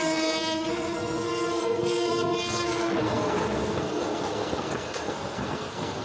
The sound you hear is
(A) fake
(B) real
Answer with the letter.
A